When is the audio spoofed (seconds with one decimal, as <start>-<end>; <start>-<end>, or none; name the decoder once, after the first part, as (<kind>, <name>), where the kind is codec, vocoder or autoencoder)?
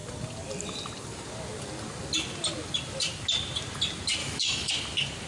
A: 4.2-4.7 (autoencoder, DAC-VAE)